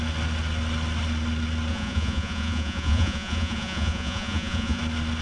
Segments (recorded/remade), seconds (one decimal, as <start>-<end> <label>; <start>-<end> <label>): 0.0-1.7 recorded; 1.7-4.8 remade; 4.8-5.2 recorded